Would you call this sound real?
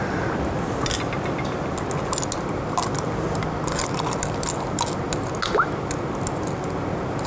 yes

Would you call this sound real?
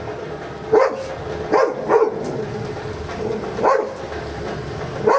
yes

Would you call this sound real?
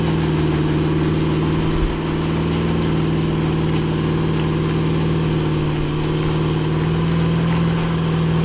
yes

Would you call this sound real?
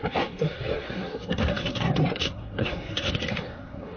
no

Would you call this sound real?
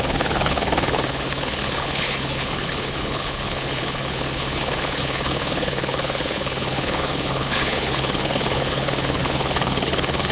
no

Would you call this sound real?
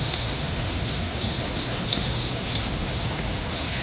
no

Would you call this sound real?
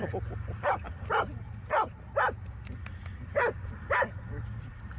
yes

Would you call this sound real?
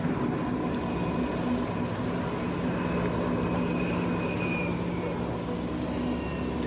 yes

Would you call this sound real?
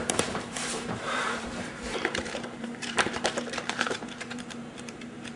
no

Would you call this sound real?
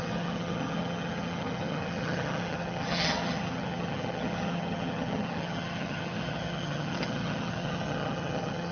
no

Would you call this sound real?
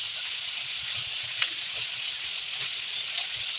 no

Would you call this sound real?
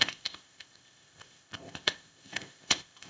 no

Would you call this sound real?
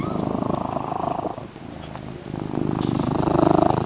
yes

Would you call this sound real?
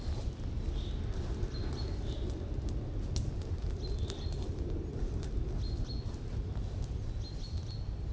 yes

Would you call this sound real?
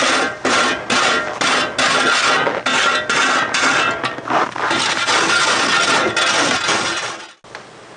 yes